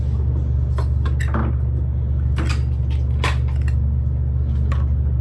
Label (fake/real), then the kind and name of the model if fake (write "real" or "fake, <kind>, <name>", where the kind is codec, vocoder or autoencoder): real